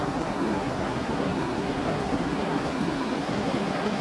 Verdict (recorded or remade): remade